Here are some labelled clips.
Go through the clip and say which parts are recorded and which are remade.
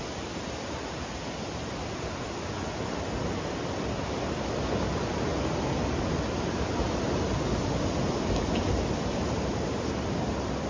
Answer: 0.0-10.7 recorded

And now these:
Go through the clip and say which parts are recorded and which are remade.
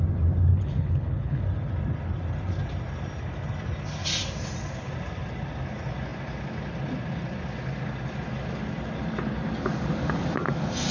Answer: 0.0-0.5 recorded; 0.5-1.4 remade; 1.4-10.9 recorded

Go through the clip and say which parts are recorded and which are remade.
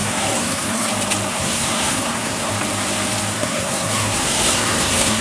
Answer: 0.0-0.9 remade; 0.9-1.3 recorded; 1.3-2.5 remade; 2.5-3.3 recorded; 3.3-5.2 remade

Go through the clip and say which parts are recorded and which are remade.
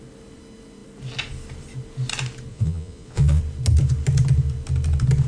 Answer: 0.0-2.5 recorded; 2.5-3.4 remade; 3.4-5.3 recorded